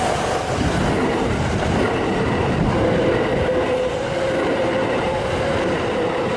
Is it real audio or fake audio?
fake